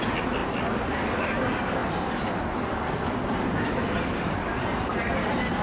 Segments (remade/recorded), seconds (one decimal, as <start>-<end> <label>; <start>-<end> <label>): 0.0-5.6 recorded